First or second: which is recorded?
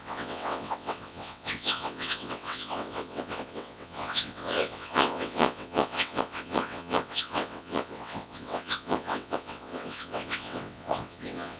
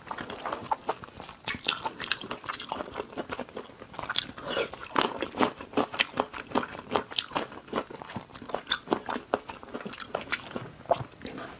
second